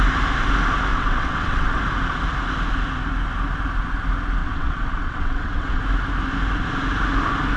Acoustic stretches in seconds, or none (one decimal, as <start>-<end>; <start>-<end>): 0.0-0.9; 1.8-4.4; 5.8-7.6